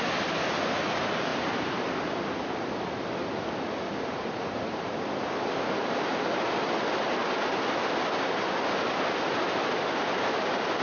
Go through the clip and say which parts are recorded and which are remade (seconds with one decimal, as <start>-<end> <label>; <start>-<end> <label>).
0.0-1.3 recorded; 1.3-2.7 remade; 2.7-7.2 recorded; 7.2-7.8 remade; 7.8-10.8 recorded